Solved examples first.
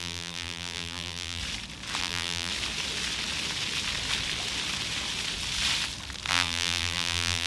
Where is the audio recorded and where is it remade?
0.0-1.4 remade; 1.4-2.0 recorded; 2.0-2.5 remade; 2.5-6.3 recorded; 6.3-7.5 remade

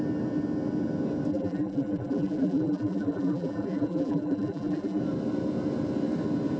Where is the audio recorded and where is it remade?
0.0-1.3 recorded; 1.3-5.0 remade; 5.0-6.6 recorded

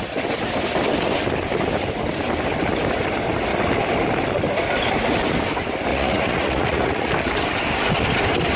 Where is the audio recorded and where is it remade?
0.0-5.9 recorded; 5.9-7.1 remade; 7.1-8.6 recorded